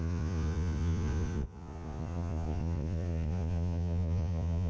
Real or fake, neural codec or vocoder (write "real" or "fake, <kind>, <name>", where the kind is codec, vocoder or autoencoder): fake, vocoder, Vocos